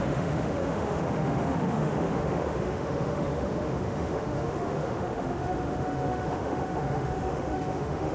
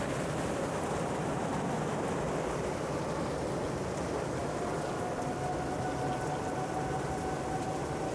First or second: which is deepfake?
first